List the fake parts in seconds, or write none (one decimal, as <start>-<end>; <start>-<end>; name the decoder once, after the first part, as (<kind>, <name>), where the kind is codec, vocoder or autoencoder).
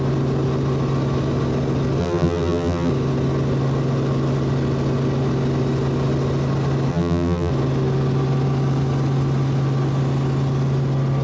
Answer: 2.0-2.9 (vocoder, BigVGAN v2); 6.9-7.5